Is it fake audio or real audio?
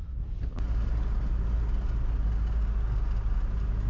real